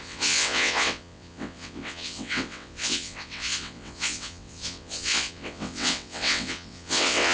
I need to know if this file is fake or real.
fake